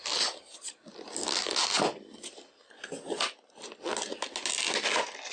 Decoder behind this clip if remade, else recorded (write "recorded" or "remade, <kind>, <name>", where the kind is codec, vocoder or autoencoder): recorded